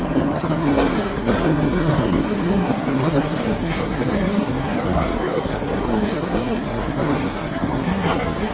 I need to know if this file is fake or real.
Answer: fake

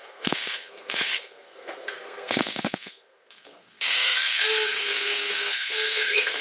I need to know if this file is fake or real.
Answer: fake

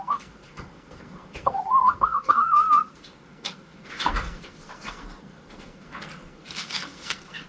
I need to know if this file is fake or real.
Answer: fake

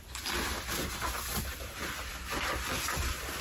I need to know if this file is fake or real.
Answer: real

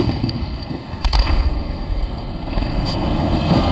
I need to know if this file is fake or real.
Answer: fake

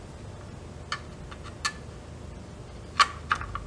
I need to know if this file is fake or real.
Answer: real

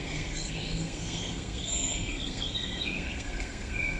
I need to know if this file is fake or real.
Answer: fake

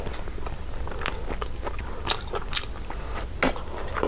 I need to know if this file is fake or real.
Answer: real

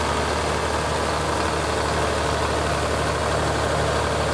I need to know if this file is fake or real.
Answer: real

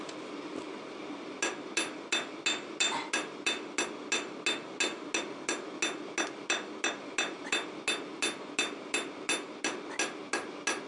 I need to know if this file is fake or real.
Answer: real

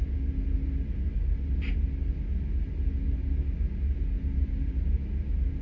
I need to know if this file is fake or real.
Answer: real